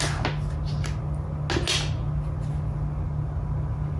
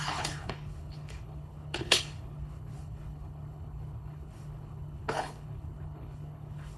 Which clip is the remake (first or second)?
second